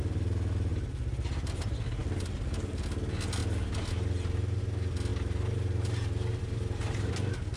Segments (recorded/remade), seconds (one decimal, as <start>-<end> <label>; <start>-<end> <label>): 0.0-7.6 recorded